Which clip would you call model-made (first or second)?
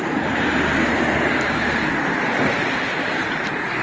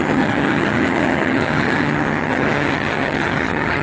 second